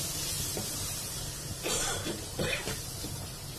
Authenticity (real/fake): real